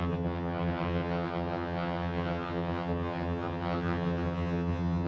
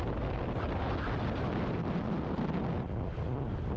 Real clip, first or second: second